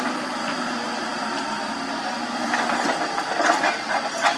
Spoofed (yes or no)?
yes